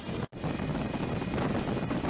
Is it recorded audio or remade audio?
recorded